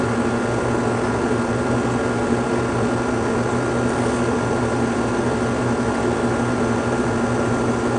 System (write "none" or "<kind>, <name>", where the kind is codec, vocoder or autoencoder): none